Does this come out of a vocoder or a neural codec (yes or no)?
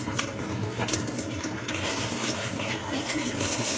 yes